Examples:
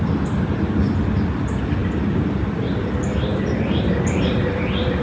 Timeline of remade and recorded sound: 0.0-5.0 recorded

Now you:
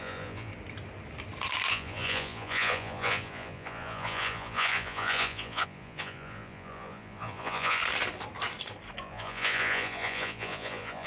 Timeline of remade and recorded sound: 0.0-0.5 remade; 0.5-1.7 recorded; 1.7-7.8 remade; 7.8-9.0 recorded; 9.0-11.1 remade